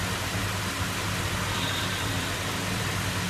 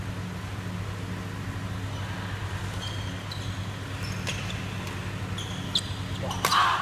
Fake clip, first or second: first